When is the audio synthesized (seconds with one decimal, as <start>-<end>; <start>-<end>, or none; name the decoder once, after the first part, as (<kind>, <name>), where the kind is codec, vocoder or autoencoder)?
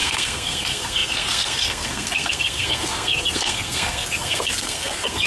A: 0.0-5.3 (codec, SNAC)